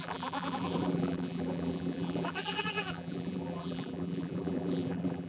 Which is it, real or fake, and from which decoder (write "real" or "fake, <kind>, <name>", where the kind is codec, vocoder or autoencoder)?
fake, vocoder, BigVGAN v2